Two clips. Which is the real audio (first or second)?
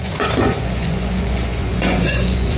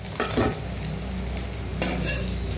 second